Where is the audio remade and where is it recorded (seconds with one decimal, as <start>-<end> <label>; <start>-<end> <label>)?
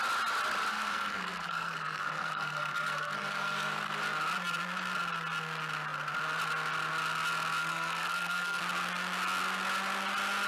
0.0-0.7 recorded; 0.7-4.0 remade; 4.0-7.6 recorded; 7.6-8.6 remade; 8.6-10.5 recorded